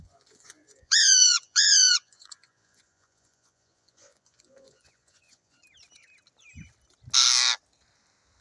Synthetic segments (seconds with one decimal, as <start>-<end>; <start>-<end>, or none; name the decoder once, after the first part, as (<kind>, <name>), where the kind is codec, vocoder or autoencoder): 0.0-5.6 (vocoder, Vocos)